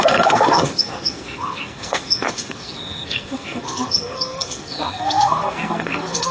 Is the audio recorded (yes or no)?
no